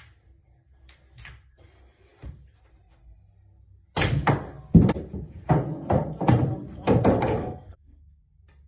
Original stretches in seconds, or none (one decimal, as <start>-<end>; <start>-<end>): 0.0-7.4; 8.2-8.7